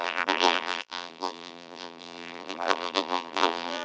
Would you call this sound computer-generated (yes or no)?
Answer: yes